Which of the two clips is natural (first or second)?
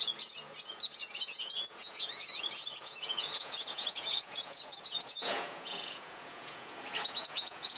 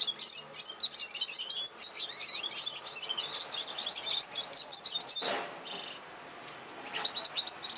second